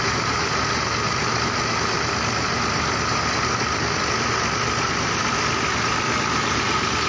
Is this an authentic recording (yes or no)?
yes